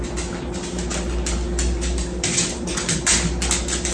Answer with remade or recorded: recorded